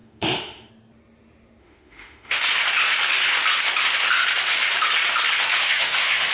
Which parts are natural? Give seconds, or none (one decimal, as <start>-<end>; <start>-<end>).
0.7-1.6; 2.4-5.6